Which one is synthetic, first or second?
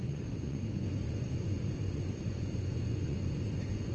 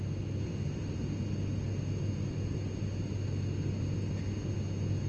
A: first